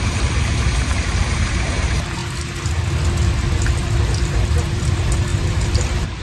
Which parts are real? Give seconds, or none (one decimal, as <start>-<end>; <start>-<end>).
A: 2.2-4.0

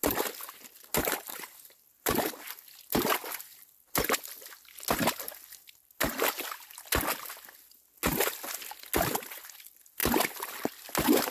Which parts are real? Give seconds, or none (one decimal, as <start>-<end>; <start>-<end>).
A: 0.0-11.3

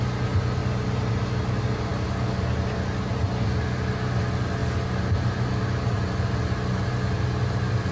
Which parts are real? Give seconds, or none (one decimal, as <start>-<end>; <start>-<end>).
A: 0.0-7.9

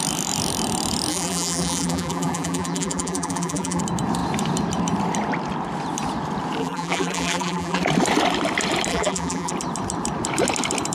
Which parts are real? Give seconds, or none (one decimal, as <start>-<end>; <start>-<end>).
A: 0.0-1.1; 3.8-6.6; 7.8-8.9; 9.5-10.9

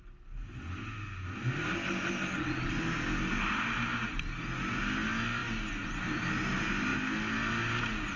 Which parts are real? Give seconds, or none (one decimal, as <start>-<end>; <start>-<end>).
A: 0.0-8.2

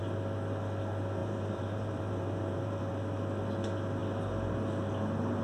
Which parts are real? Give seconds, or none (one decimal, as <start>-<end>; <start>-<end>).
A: 0.0-1.2; 2.9-5.4